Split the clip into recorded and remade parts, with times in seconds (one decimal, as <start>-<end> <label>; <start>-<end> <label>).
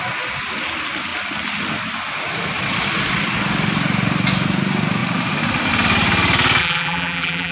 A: 0.0-6.6 recorded; 6.6-7.5 remade